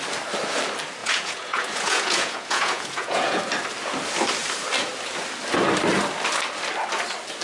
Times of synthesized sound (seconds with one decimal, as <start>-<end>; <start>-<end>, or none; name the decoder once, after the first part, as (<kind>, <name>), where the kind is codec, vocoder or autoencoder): 1.0-3.4 (vocoder, Vocos)

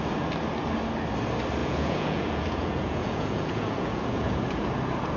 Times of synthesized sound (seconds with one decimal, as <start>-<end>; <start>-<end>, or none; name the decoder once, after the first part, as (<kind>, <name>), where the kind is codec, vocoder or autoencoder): 1.6-4.7 (vocoder, Vocos)

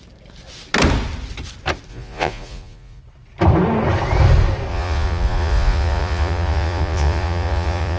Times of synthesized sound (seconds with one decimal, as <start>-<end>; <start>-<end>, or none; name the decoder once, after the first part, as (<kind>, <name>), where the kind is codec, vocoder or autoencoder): 1.9-3.0 (vocoder, Vocos); 4.7-8.0

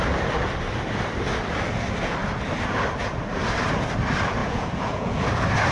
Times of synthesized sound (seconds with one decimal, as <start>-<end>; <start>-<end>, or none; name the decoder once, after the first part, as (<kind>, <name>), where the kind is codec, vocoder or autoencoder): 4.4-5.2 (vocoder, Vocos)